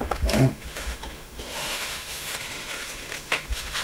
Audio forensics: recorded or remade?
remade